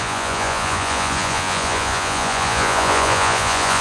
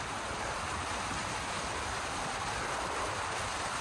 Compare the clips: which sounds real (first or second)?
second